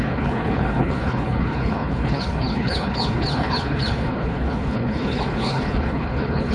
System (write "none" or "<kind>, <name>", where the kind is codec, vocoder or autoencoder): codec, HILCodec